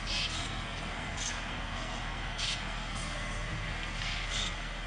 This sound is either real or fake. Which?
fake